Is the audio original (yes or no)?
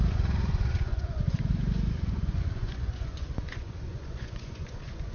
no